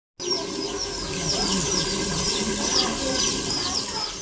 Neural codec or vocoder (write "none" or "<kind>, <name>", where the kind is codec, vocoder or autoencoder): none